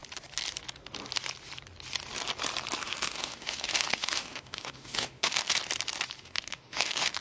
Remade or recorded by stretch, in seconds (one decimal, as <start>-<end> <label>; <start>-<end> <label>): 0.0-2.8 recorded; 2.8-5.6 remade; 5.6-6.2 recorded; 6.2-7.2 remade